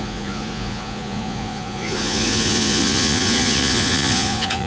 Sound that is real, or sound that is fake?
fake